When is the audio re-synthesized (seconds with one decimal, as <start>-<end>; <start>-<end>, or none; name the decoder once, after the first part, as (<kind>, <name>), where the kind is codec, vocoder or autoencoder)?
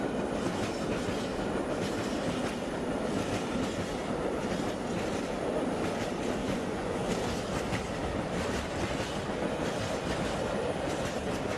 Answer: 6.4-7.1 (vocoder, Vocos)